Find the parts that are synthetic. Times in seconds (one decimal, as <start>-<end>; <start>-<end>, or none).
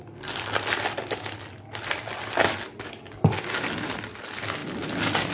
none